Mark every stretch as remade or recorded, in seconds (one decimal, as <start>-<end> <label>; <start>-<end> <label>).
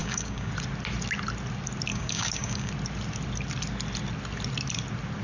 0.0-0.5 remade; 0.5-1.9 recorded; 1.9-2.7 remade; 2.7-5.2 recorded